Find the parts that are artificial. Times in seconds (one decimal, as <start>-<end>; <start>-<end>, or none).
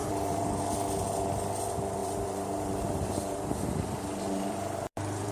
0.0-0.6; 2.0-5.3